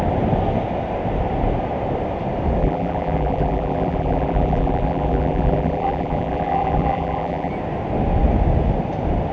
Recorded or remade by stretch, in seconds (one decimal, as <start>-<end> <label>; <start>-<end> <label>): 0.0-2.6 recorded; 2.6-7.5 remade; 7.5-9.3 recorded